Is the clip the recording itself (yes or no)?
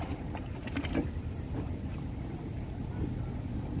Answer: no